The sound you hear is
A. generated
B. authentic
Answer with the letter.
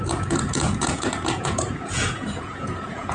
A